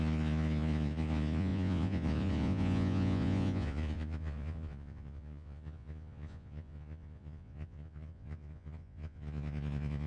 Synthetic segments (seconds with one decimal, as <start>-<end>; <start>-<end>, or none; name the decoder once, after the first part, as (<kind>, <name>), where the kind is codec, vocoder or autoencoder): 0.0-10.1 (vocoder, Vocos)